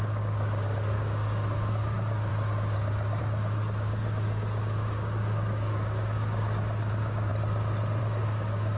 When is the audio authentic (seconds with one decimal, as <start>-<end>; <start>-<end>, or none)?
2.3-3.2; 7.3-8.0